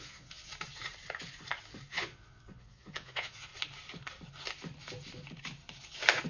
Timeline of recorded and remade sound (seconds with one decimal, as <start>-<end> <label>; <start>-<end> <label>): 0.0-0.5 remade; 0.5-1.9 recorded; 1.9-3.5 remade; 3.5-6.3 recorded